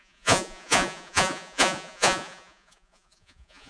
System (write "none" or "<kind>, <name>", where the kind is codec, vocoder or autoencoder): vocoder, Vocos